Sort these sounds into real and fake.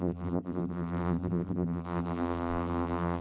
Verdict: fake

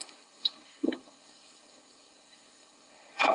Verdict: fake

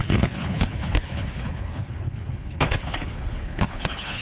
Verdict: fake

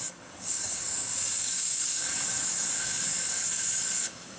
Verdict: fake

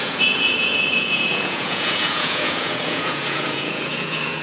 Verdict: fake